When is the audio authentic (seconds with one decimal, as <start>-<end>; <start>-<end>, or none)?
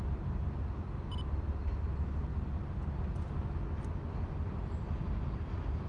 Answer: 0.0-2.3; 2.9-5.9